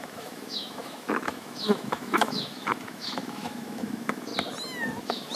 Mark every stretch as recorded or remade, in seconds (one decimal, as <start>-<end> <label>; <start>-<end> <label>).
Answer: 0.0-4.3 remade; 4.3-5.0 recorded; 5.0-5.4 remade